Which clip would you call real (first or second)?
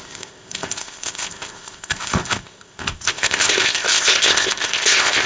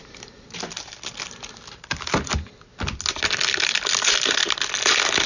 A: second